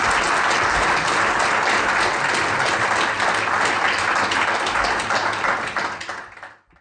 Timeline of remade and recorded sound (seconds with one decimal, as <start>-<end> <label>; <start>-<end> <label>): 0.0-6.8 recorded